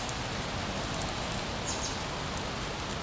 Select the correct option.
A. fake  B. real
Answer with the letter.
B